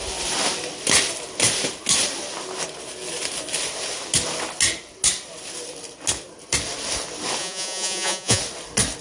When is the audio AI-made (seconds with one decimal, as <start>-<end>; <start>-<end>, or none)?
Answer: 7.4-8.4